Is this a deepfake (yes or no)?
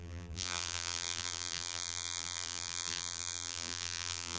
yes